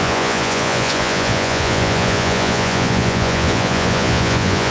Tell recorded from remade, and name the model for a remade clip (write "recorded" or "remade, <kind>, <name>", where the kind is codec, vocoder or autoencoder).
remade, vocoder, Vocos